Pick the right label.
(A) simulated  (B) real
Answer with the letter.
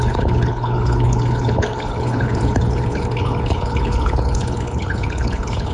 A